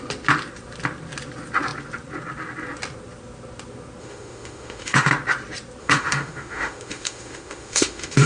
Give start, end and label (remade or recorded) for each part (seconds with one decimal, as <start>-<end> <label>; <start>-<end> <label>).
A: 0.0-4.0 recorded; 4.0-5.1 remade; 5.1-5.8 recorded; 5.8-8.3 remade